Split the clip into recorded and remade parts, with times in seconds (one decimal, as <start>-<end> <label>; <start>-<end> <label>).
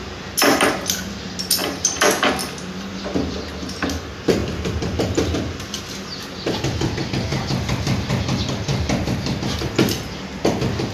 0.0-1.6 recorded; 1.6-2.3 remade; 2.3-4.4 recorded; 4.4-5.8 remade; 5.8-10.9 recorded